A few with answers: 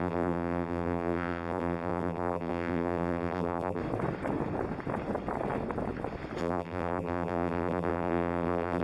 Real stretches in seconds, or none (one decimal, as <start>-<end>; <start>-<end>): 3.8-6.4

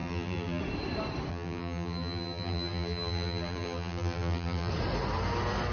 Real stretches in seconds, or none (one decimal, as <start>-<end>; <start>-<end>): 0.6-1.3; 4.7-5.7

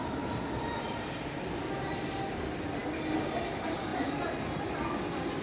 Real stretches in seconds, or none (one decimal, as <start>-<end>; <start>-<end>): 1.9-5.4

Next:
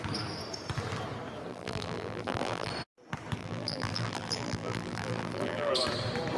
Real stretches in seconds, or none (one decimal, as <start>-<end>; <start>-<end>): 0.0-1.5; 2.7-3.4; 5.7-6.4

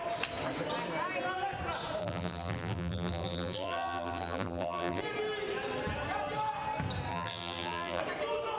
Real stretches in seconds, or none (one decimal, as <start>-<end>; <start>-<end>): 0.0-2.0; 5.0-7.1; 8.0-8.6

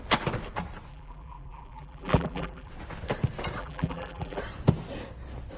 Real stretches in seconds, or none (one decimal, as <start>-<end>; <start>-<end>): 0.0-0.9; 2.7-3.6; 4.4-5.6

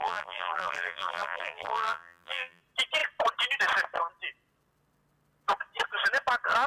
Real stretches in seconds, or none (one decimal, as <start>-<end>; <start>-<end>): 2.6-6.7

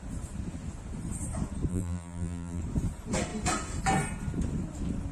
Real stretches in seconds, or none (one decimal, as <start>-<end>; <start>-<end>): 0.0-1.7; 2.6-5.1